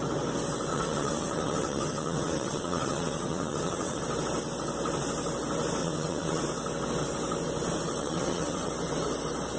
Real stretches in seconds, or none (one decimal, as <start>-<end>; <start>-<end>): 0.0-0.7; 4.0-5.8; 6.4-8.0; 8.7-9.6